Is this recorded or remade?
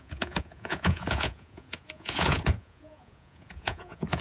remade